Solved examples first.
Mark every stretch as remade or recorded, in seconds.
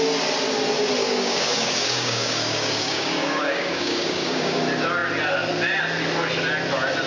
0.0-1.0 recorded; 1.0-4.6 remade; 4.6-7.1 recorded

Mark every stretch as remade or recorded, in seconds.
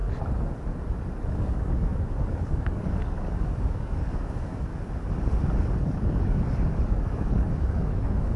0.0-1.3 recorded; 1.3-4.7 remade; 4.7-5.8 recorded; 5.8-8.4 remade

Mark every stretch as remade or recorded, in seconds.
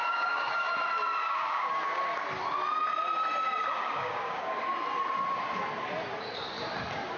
0.0-0.7 remade; 0.7-1.2 recorded; 1.2-2.0 remade; 2.0-3.8 recorded; 3.8-4.6 remade; 4.6-7.2 recorded